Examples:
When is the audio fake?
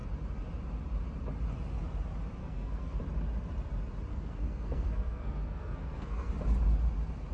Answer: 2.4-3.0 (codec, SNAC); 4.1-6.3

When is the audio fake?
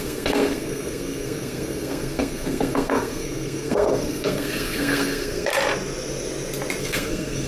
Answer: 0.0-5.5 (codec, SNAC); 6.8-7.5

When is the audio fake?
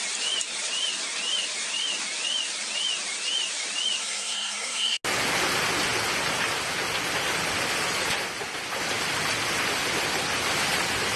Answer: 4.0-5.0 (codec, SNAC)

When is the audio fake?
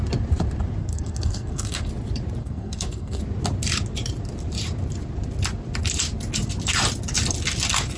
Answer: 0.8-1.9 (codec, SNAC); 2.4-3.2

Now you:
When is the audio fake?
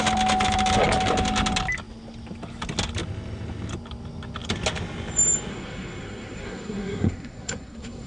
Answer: 5.5-8.1 (codec, SNAC)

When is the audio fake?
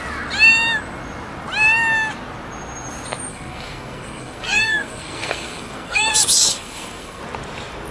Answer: 3.3-6.1 (codec, SNAC); 6.5-7.2